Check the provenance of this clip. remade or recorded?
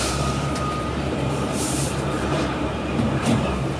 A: remade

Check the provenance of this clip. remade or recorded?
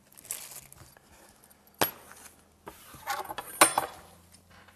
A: recorded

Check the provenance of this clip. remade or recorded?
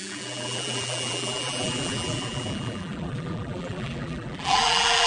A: remade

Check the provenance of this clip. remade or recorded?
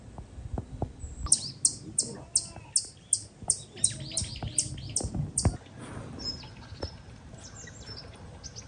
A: recorded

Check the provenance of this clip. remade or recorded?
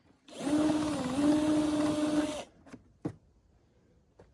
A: recorded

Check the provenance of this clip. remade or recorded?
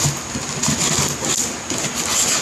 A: recorded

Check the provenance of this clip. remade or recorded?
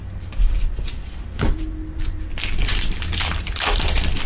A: remade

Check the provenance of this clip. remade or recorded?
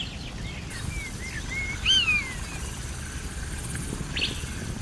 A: recorded